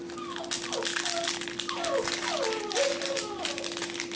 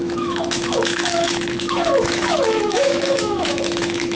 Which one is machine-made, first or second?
second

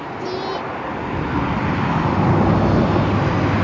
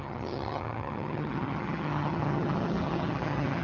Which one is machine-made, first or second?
second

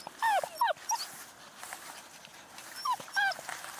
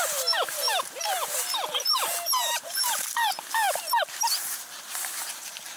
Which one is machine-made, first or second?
second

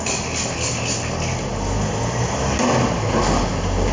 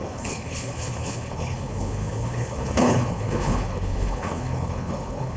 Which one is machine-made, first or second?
second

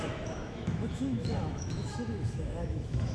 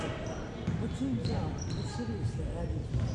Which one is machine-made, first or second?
first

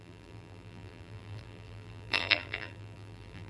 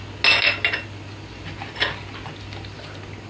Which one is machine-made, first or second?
first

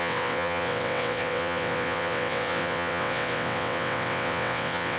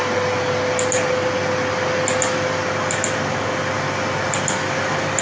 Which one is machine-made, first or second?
first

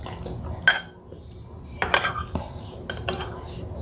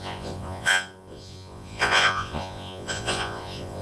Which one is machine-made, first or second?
second